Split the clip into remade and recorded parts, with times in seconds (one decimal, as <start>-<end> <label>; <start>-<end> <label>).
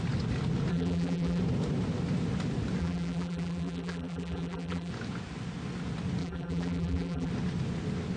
0.0-0.7 recorded; 0.7-1.4 remade; 1.4-2.8 recorded; 2.8-4.9 remade; 4.9-6.2 recorded; 6.2-7.3 remade; 7.3-8.2 recorded